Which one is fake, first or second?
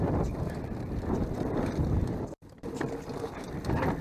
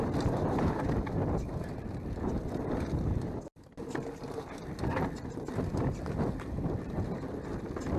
first